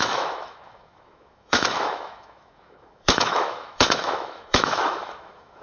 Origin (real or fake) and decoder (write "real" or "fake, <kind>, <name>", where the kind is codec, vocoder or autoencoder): fake, autoencoder, DAC-VAE